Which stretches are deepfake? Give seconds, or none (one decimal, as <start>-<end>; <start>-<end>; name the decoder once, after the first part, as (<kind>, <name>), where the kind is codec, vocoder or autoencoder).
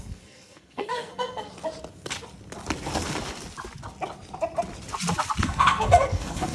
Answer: 0.0-1.5 (codec, SNAC); 5.4-6.5